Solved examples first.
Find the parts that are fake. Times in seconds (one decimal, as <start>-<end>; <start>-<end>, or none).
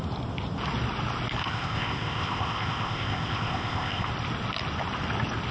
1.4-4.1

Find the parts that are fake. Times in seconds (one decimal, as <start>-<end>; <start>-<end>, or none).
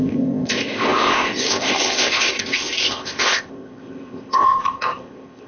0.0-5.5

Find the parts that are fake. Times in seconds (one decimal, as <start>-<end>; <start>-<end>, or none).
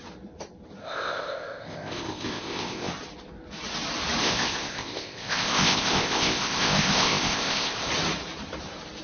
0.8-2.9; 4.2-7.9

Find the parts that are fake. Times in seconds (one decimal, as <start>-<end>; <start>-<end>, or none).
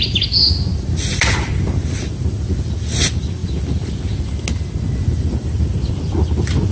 none